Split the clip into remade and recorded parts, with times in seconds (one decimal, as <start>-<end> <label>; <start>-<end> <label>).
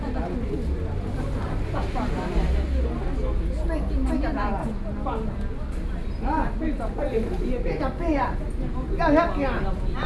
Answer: 0.0-10.1 recorded